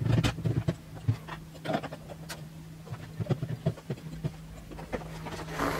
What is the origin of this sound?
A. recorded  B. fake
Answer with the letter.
A